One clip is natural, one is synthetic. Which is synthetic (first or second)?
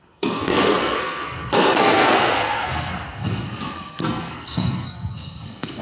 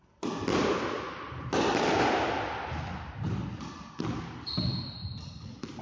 first